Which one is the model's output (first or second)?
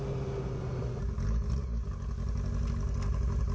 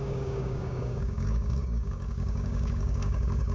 second